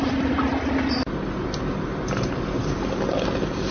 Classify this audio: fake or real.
real